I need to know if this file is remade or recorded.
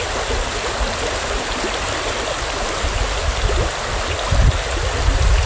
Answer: recorded